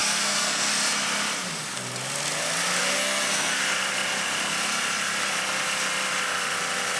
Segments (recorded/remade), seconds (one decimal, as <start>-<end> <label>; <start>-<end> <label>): 0.0-0.7 remade; 0.7-2.8 recorded; 2.8-3.6 remade; 3.6-7.0 recorded

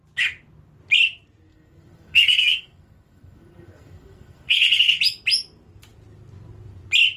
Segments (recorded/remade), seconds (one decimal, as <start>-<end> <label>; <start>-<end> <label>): 0.0-1.5 recorded; 1.5-5.0 remade; 5.0-7.2 recorded

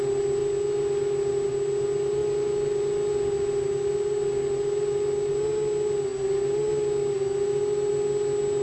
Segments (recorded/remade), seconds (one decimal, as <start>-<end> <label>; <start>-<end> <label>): 0.0-8.6 recorded

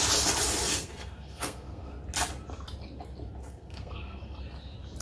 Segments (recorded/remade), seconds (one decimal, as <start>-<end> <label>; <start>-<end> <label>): 0.0-0.7 recorded; 0.7-1.9 remade; 1.9-3.4 recorded; 3.4-4.4 remade; 4.4-5.0 recorded

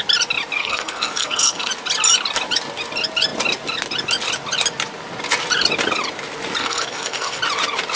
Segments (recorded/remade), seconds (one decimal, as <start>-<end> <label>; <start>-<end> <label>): 0.0-0.6 recorded; 0.6-1.7 remade; 1.7-6.6 recorded; 6.6-7.4 remade; 7.4-8.0 recorded